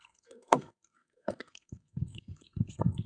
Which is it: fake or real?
fake